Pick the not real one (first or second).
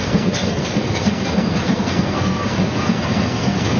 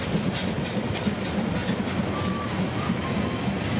first